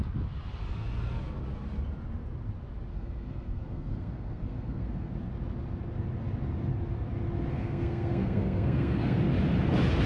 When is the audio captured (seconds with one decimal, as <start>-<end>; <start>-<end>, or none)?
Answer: 0.0-2.9; 5.1-7.5; 9.2-10.1